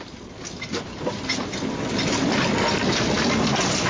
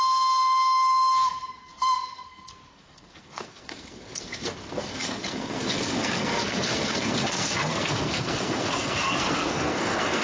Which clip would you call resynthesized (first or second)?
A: second